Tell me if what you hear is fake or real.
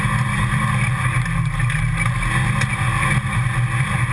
real